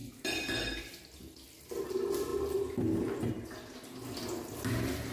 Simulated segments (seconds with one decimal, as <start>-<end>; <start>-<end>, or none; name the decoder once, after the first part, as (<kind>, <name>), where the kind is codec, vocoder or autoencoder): none